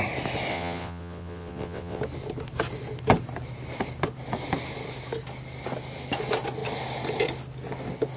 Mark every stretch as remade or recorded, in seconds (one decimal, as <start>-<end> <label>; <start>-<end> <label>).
0.0-0.5 recorded; 0.5-2.0 remade; 2.0-8.2 recorded